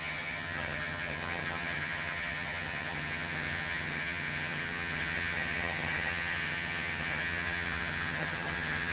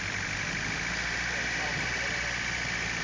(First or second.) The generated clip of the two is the first